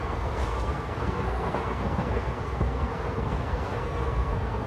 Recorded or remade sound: remade